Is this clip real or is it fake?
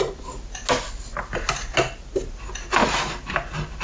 real